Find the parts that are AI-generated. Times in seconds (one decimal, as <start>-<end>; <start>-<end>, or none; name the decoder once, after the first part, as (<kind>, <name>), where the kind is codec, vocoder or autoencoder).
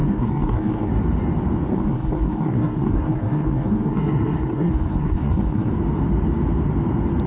0.0-0.9 (codec, SNAC); 1.7-5.7